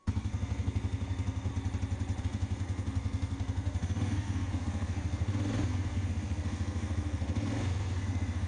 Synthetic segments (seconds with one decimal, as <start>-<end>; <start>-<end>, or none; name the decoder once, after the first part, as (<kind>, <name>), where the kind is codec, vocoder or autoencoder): 0.0-1.5 (codec, SNAC); 2.2-8.5